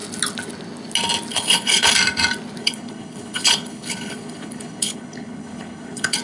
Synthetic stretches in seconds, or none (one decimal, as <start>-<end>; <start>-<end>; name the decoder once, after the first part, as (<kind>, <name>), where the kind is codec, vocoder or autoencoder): 1.3-1.9 (codec, HILCodec); 2.6-6.2